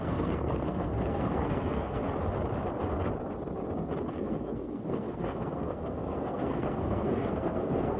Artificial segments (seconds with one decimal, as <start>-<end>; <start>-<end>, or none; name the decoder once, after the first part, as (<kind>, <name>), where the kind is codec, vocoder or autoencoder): 0.0-2.0 (codec, SNAC); 4.1-8.0